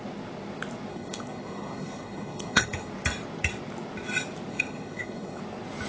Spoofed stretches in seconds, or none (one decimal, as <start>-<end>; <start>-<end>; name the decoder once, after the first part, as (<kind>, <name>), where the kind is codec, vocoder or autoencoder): 0.9-2.9 (codec, HILCodec); 4.5-5.4